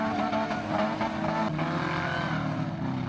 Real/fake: real